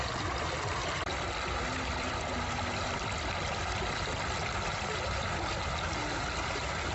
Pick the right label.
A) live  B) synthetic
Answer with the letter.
A